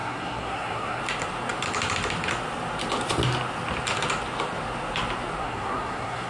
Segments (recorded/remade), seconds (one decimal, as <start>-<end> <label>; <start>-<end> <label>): 0.0-1.0 remade; 1.0-5.4 recorded; 5.4-6.3 remade